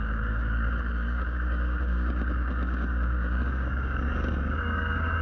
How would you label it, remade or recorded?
remade